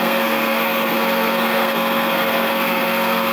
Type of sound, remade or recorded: remade